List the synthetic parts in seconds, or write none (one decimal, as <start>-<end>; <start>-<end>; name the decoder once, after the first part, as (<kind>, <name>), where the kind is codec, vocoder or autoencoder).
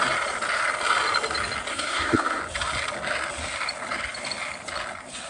1.7-2.4 (codec, SNAC)